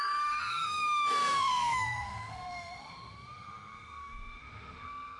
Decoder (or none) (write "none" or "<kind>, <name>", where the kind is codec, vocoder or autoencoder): autoencoder, DAC-VAE